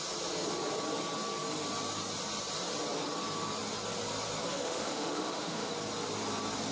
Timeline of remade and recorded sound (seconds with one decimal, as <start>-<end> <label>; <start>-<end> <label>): 0.0-4.5 recorded; 4.5-5.7 remade; 5.7-6.7 recorded